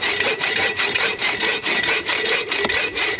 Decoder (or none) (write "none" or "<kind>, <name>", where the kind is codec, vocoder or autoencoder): vocoder, BigVGAN v2